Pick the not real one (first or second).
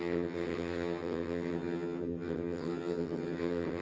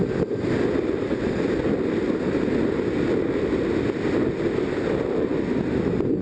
first